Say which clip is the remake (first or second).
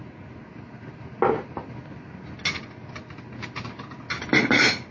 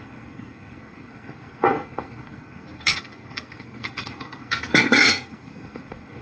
second